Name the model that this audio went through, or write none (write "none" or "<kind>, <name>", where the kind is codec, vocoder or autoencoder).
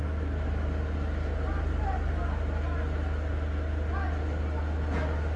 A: none